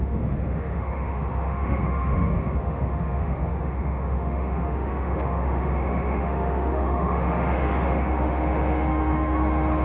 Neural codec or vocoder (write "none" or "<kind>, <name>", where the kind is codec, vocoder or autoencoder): autoencoder, DAC-VAE